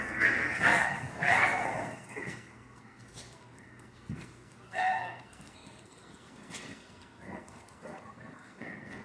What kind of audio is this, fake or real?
fake